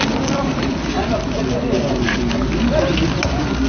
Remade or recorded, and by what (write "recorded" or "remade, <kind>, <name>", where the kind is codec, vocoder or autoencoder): recorded